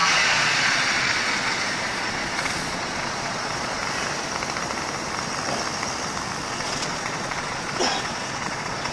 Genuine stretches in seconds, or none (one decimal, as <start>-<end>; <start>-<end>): 3.8-6.5